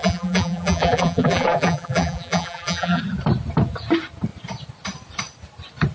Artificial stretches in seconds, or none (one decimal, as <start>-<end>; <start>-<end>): 0.0-3.0